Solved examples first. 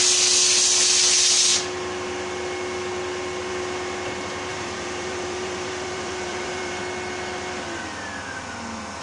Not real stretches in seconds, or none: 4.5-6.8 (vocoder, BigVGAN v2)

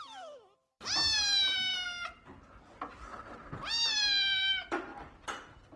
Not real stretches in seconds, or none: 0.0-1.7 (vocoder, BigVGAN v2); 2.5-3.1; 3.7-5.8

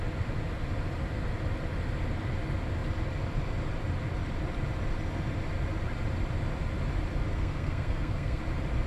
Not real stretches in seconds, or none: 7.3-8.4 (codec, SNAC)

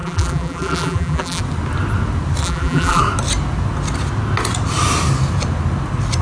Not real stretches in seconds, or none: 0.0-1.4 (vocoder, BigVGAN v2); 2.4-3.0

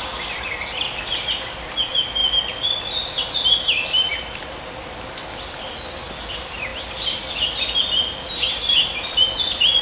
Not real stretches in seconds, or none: none

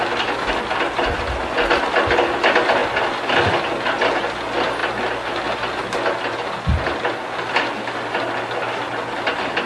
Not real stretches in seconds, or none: 2.8-3.5 (vocoder, BigVGAN v2)

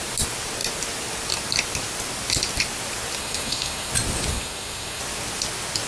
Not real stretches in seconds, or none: 3.2-3.9 (codec, SNAC); 4.3-5.0